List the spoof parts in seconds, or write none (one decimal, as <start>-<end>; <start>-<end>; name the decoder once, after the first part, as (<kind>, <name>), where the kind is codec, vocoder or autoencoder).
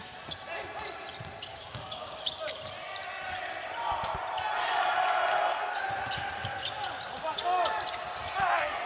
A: 1.5-2.3 (codec, DAC)